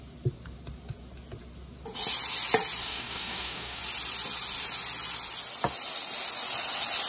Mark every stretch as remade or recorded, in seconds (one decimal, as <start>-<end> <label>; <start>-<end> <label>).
0.0-2.8 recorded; 2.8-3.8 remade; 3.8-7.1 recorded